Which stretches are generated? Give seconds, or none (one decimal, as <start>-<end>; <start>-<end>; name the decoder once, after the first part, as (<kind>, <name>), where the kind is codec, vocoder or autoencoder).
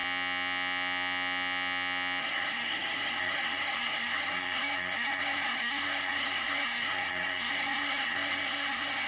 2.2-9.1 (codec, SNAC)